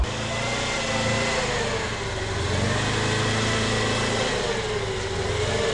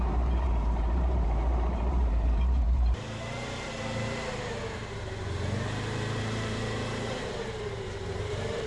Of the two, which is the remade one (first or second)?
second